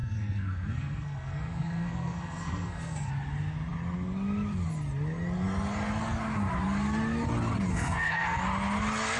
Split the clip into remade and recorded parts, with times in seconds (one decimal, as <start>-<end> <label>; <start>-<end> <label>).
0.0-3.1 remade; 3.1-7.7 recorded; 7.7-8.4 remade; 8.4-9.2 recorded